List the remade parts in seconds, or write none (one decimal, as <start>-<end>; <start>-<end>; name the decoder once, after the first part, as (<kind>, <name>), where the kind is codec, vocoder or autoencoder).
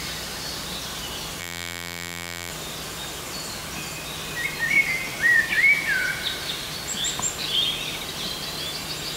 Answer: 1.4-2.5 (vocoder, BigVGAN v2)